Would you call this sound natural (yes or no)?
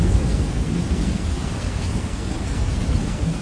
no